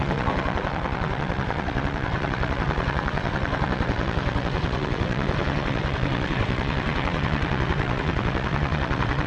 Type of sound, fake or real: fake